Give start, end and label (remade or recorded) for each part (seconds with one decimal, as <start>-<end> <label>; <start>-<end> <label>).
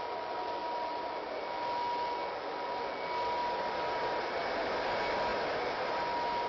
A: 0.0-6.5 recorded